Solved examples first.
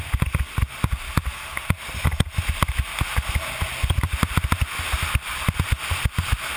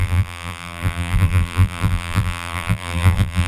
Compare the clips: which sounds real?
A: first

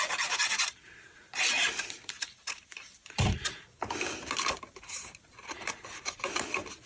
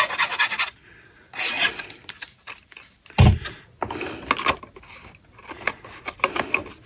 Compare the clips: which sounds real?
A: second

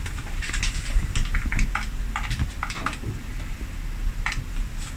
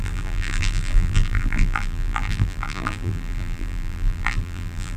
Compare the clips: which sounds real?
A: first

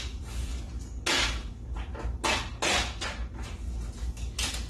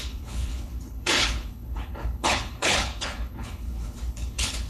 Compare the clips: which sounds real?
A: first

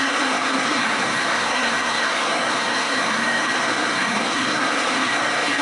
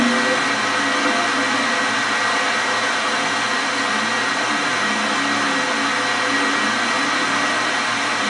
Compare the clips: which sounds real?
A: second